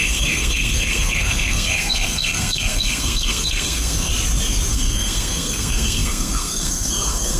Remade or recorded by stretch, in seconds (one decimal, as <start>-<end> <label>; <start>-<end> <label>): 0.0-4.1 remade; 4.1-4.7 recorded; 4.7-7.4 remade